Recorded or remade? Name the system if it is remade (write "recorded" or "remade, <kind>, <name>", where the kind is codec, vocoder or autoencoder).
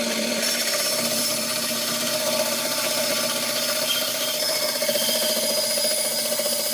remade, vocoder, BigVGAN v2